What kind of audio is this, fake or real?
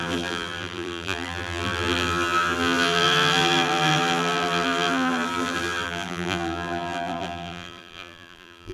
fake